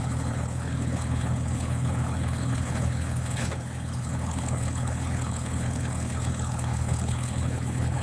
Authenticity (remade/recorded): remade